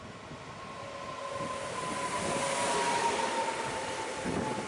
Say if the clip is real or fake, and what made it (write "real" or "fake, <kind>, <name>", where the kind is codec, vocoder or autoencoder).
real